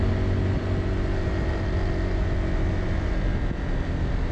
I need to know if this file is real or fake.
real